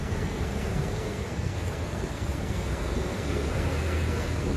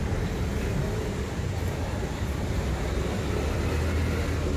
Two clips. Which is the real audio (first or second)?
second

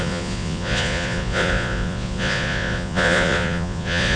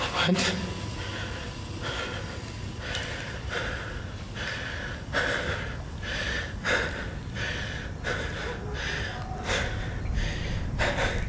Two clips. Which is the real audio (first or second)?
second